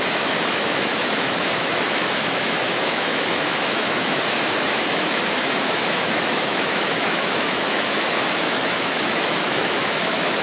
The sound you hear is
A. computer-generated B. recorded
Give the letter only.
A